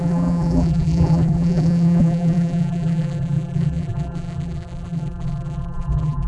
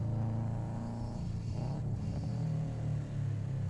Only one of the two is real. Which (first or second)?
second